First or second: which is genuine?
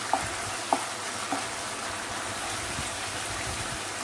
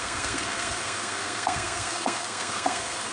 first